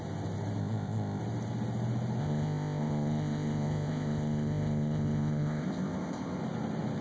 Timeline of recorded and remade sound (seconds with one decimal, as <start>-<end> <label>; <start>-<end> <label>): 0.0-0.6 recorded; 0.6-1.2 remade; 1.2-2.2 recorded; 2.2-6.4 remade; 6.4-7.0 recorded